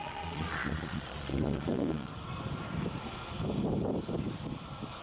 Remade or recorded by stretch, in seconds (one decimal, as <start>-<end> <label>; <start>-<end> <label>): 0.0-2.1 remade; 2.1-5.0 recorded